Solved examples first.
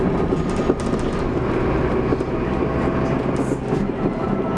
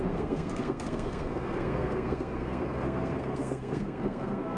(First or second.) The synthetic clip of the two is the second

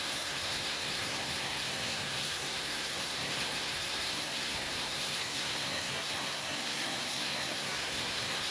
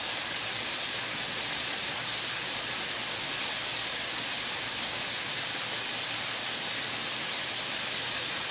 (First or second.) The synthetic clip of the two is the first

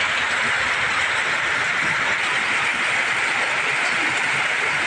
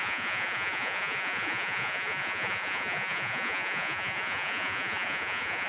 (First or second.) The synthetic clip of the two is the second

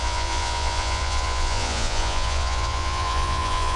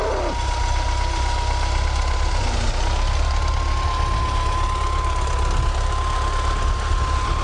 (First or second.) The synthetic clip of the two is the first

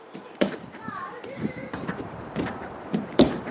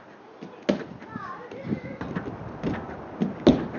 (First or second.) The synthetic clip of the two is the first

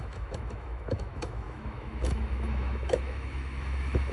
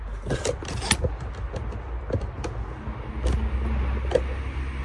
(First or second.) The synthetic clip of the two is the first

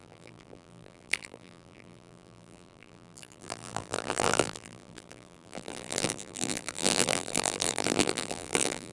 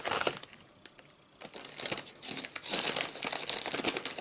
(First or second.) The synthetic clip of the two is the first